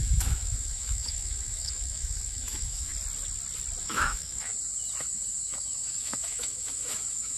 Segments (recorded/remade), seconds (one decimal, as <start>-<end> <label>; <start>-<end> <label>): 0.0-2.9 remade; 2.9-3.8 recorded; 3.8-4.5 remade; 4.5-5.0 recorded; 5.0-7.4 remade